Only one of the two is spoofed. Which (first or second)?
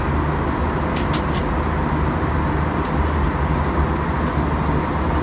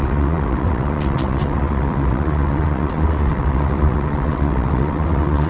second